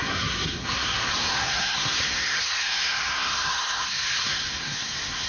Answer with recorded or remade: remade